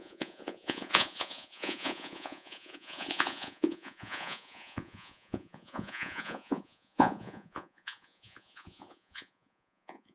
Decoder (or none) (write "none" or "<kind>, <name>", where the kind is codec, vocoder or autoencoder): vocoder, Vocos